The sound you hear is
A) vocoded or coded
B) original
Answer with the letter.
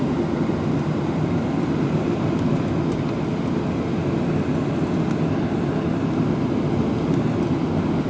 B